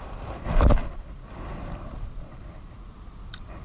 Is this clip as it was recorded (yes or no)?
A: no